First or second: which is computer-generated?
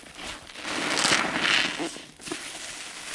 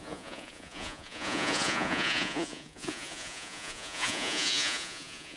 second